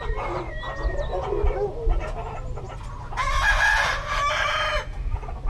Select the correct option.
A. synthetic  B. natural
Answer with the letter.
B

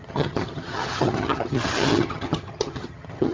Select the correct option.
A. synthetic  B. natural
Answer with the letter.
A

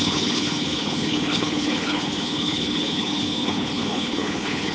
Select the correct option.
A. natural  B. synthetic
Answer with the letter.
B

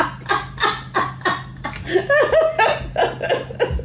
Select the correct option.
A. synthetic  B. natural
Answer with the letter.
B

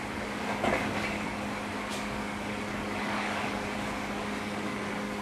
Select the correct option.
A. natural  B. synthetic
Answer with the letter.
B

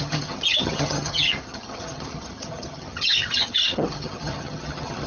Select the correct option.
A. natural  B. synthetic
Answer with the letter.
B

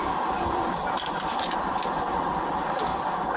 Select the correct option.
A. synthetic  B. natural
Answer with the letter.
B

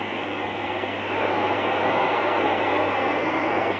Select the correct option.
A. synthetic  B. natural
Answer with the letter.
A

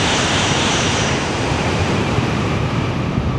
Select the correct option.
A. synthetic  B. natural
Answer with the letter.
A